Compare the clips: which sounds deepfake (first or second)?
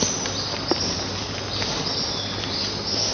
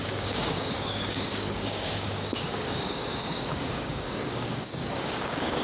second